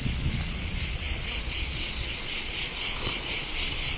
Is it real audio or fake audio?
fake